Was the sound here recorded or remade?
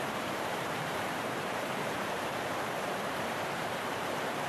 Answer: remade